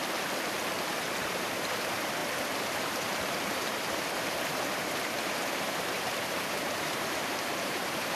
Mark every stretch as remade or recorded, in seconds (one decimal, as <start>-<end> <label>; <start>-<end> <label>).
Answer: 0.0-0.9 recorded; 0.9-8.2 remade